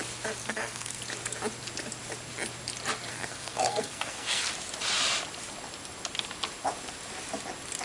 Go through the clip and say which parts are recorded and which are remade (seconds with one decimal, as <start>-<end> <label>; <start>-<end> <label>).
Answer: 0.0-0.4 recorded; 0.4-1.0 remade; 1.0-3.1 recorded; 3.1-4.5 remade; 4.5-7.8 recorded